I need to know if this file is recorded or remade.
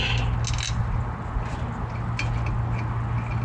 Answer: recorded